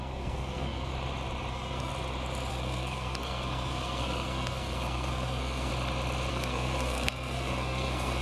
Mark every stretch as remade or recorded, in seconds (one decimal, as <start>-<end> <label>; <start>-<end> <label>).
0.0-0.9 remade; 0.9-1.5 recorded; 1.5-1.9 remade; 1.9-2.5 recorded; 2.5-5.7 remade; 5.7-6.3 recorded; 6.3-8.2 remade

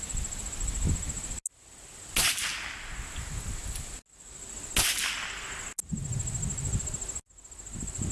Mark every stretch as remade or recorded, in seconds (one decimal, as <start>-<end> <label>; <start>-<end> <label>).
0.0-8.1 recorded

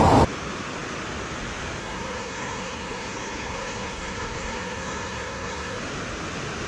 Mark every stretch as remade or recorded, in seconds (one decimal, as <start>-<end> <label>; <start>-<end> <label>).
0.0-1.8 recorded; 1.8-5.8 remade; 5.8-6.7 recorded

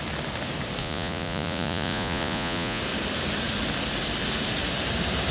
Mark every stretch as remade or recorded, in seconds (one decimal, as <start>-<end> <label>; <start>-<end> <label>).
0.0-0.8 recorded; 0.8-2.8 remade; 2.8-5.3 recorded